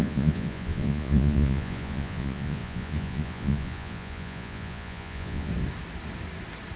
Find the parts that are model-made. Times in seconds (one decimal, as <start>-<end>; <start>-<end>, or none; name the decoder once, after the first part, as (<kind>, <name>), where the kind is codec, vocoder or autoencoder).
0.0-5.5 (vocoder, Vocos)